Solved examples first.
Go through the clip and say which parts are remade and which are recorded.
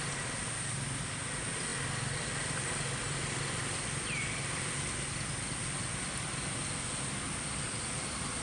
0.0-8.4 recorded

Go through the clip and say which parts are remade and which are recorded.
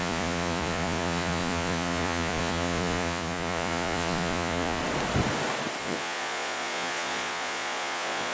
0.0-4.8 remade; 4.8-5.8 recorded; 5.8-8.3 remade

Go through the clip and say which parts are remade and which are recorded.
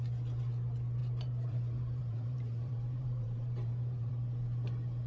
0.0-1.0 recorded; 1.0-4.1 remade; 4.1-5.1 recorded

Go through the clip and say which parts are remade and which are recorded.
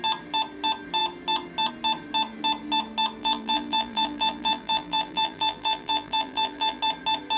0.0-3.2 recorded; 3.2-6.8 remade; 6.8-7.4 recorded